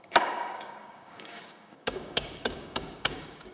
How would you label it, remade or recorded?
remade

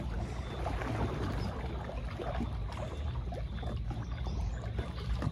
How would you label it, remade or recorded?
recorded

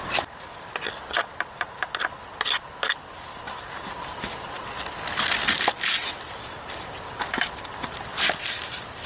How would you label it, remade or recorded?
recorded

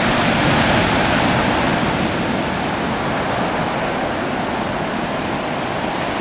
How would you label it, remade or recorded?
recorded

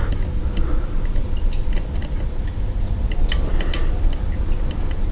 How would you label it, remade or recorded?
recorded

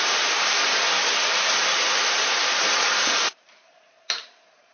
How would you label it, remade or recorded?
remade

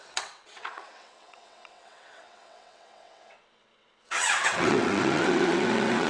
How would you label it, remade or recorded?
remade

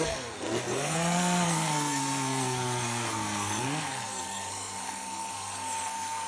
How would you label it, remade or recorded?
remade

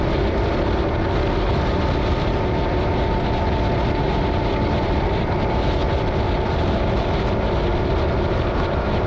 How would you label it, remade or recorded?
recorded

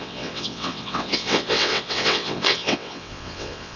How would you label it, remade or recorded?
remade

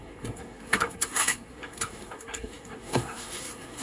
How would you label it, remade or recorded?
remade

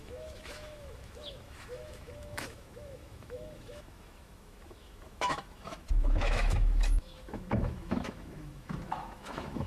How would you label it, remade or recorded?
remade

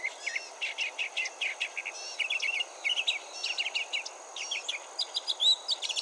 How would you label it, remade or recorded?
recorded